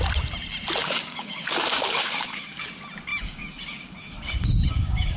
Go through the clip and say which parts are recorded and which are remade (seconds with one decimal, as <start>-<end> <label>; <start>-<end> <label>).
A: 0.0-0.8 recorded; 0.8-2.7 remade; 2.7-3.1 recorded; 3.1-5.2 remade